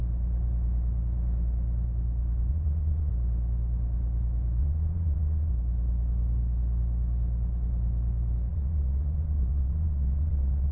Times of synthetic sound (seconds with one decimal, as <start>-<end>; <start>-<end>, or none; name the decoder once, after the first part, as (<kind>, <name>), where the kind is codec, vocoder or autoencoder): 2.5-3.1 (vocoder, Vocos); 4.6-5.5; 8.5-10.7